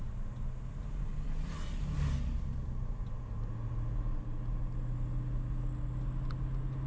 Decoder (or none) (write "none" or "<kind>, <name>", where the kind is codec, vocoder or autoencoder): none